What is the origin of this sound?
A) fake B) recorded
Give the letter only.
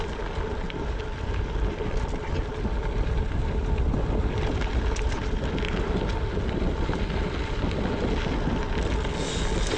B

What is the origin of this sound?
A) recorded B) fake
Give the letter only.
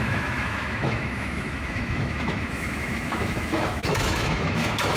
B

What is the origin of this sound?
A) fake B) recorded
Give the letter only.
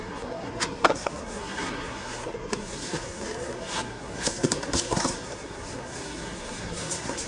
A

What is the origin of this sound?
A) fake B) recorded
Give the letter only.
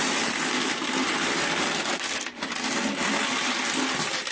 B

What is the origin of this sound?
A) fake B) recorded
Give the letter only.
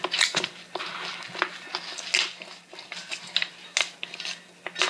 B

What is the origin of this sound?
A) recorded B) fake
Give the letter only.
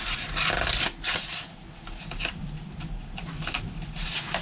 A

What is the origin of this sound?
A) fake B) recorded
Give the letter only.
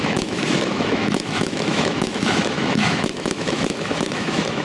A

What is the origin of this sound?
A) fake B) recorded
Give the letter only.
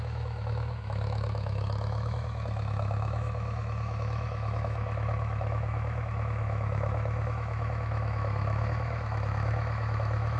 A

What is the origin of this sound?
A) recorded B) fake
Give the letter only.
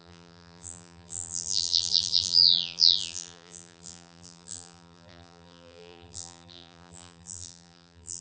B